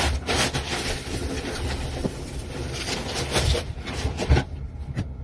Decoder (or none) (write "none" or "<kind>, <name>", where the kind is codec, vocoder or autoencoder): vocoder, BigVGAN v2